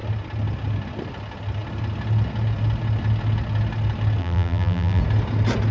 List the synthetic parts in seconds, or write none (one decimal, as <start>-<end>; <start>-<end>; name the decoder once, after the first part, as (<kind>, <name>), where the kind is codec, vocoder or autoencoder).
4.2-5.0 (vocoder, BigVGAN v2)